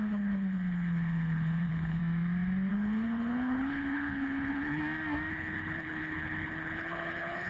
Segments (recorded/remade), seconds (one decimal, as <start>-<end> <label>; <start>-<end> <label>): 0.0-2.0 remade; 2.0-2.7 recorded; 2.7-4.8 remade; 4.8-5.3 recorded; 5.3-7.5 remade